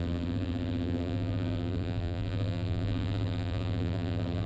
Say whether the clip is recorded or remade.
remade